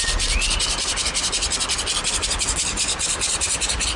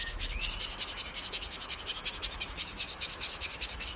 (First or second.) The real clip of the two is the first